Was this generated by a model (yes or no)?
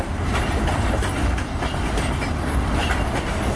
no